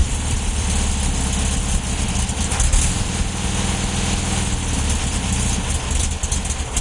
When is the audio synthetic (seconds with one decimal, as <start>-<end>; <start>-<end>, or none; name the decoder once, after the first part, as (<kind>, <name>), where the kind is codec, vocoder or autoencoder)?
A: 0.0-0.9 (vocoder, BigVGAN v2)